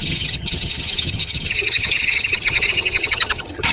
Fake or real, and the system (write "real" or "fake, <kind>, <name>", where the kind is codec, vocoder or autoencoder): fake, vocoder, HiFi-GAN